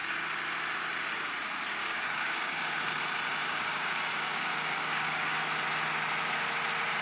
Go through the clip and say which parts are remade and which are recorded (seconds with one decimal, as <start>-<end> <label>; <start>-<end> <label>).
0.0-1.8 recorded; 1.8-3.0 remade; 3.0-3.4 recorded; 3.4-5.4 remade; 5.4-7.0 recorded